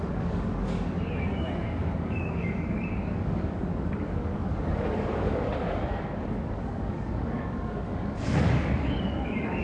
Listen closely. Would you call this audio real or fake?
fake